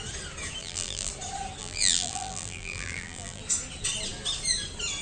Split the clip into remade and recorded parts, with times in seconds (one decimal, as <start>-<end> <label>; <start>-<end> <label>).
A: 0.0-0.6 recorded; 0.6-1.1 remade; 1.1-1.6 recorded; 1.6-3.4 remade; 3.4-5.0 recorded

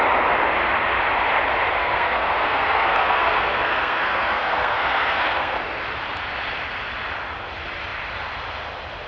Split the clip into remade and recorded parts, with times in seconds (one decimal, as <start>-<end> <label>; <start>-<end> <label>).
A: 0.0-1.8 recorded; 1.8-5.6 remade; 5.6-9.1 recorded